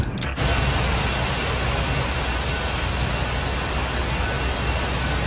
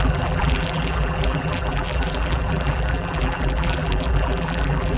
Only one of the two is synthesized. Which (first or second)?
second